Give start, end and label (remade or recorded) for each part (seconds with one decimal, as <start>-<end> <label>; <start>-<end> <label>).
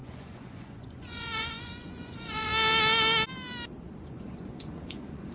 0.0-2.5 remade; 2.5-4.0 recorded; 4.0-5.3 remade